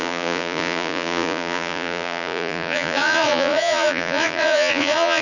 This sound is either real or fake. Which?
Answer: fake